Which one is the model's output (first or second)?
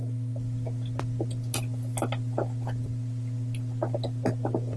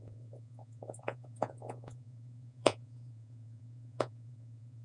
second